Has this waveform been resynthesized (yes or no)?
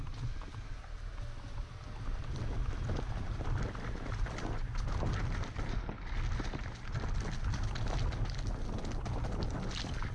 no